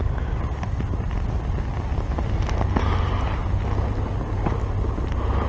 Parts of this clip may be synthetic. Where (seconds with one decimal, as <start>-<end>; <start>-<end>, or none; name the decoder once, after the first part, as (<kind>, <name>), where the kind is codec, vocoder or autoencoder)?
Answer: none